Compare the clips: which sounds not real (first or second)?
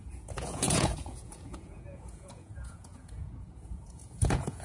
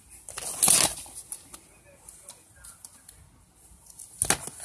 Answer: first